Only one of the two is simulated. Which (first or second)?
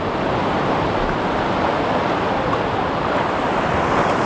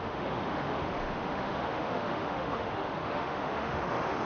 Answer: second